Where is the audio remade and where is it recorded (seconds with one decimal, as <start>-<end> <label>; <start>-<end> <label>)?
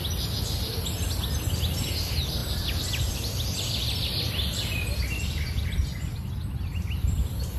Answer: 0.0-7.6 recorded